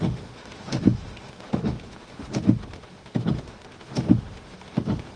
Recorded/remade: remade